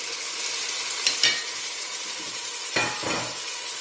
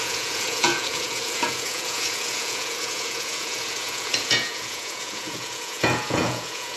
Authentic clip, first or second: first